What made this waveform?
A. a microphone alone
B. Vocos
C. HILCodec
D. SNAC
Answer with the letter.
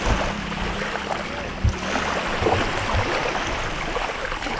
A